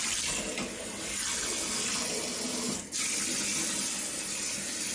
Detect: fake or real real